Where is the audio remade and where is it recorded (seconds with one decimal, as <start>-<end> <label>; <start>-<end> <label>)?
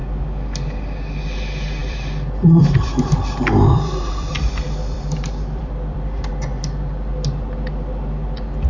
0.0-1.8 recorded; 1.8-6.3 remade; 6.3-8.7 recorded